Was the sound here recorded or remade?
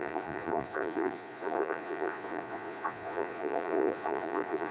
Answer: remade